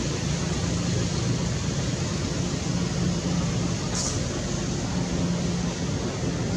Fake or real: real